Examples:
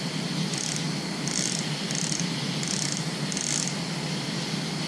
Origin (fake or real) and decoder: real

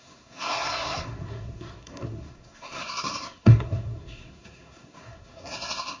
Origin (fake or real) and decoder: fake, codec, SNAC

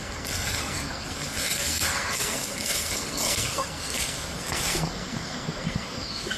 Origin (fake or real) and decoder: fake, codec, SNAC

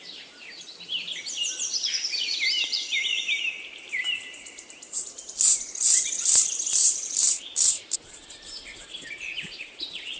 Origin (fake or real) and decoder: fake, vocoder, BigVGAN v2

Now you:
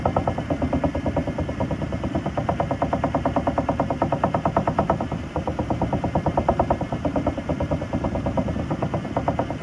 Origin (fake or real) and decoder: real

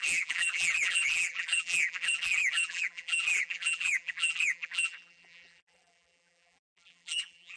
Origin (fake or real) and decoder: fake, vocoder, BigVGAN v2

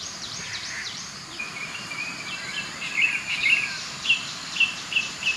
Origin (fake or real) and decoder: fake, vocoder, BigVGAN v2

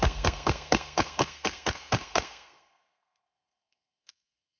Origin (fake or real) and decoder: fake, codec, SNAC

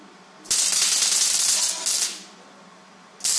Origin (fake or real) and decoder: real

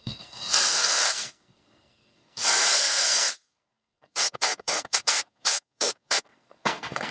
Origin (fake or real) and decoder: fake, codec, SNAC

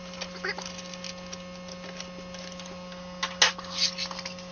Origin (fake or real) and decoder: real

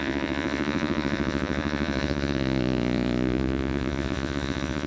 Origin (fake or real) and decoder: fake, vocoder, Vocos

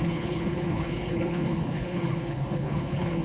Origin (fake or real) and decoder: fake, codec, HILCodec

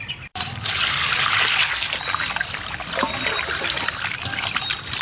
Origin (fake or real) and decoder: fake, vocoder, BigVGAN v2